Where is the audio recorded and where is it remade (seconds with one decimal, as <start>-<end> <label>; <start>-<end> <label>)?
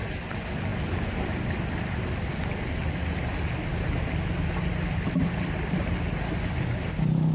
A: 0.0-0.7 remade; 0.7-5.1 recorded; 5.1-7.3 remade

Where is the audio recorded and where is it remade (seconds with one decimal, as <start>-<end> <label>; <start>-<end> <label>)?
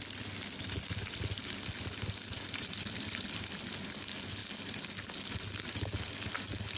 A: 0.0-6.8 recorded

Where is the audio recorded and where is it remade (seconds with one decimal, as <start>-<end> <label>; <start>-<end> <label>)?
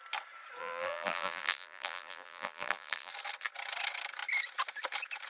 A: 0.0-0.6 recorded; 0.6-3.1 remade; 3.1-5.3 recorded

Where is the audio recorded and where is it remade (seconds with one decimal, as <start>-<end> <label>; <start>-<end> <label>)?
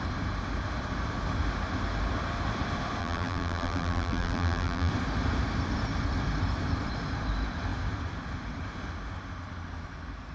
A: 0.0-3.0 recorded; 3.0-4.9 remade; 4.9-10.3 recorded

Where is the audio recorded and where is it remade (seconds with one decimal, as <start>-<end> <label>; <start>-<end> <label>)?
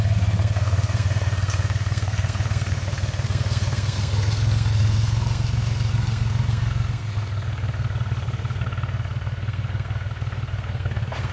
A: 0.0-11.3 remade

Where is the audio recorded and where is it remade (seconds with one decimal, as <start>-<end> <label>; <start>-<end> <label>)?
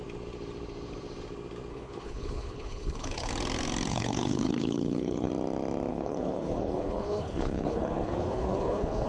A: 0.0-1.7 recorded; 1.7-3.3 remade; 3.3-3.9 recorded; 3.9-5.3 remade; 5.3-5.9 recorded; 5.9-9.1 remade